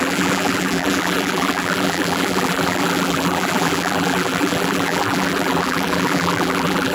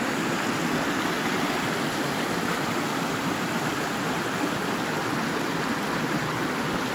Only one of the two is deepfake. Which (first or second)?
first